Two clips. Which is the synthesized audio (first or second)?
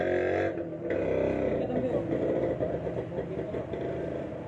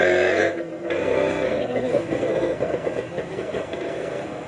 second